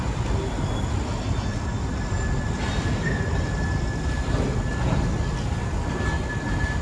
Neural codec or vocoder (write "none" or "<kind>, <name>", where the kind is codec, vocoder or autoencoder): none